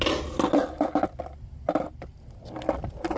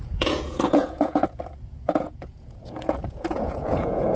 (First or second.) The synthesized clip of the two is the second